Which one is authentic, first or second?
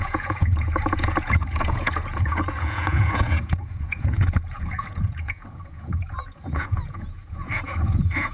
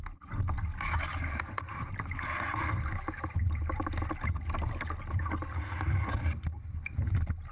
second